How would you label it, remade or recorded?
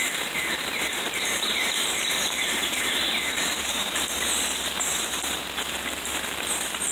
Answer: remade